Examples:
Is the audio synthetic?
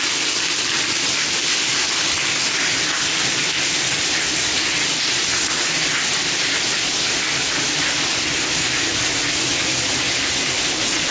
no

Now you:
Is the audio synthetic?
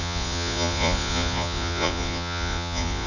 yes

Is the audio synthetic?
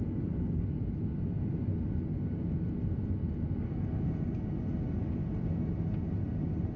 no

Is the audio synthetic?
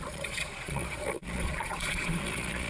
yes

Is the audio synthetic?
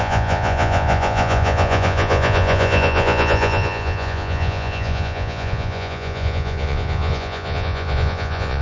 yes